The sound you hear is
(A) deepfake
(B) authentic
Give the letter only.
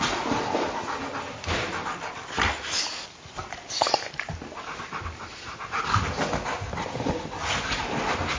A